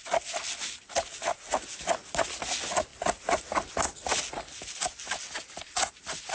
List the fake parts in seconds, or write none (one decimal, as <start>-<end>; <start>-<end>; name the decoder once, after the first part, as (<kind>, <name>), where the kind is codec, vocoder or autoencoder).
none